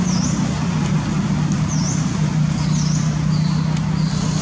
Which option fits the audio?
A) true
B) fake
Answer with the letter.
A